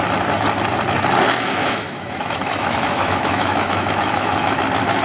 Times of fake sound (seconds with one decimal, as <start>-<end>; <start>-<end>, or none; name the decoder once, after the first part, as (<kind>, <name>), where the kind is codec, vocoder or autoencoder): 1.6-4.6 (autoencoder, DAC-VAE)

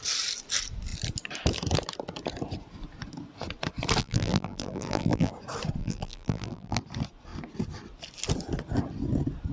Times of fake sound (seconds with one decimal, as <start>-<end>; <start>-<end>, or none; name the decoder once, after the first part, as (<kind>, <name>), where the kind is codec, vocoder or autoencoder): 4.0-5.3 (vocoder, BigVGAN v2); 5.8-6.8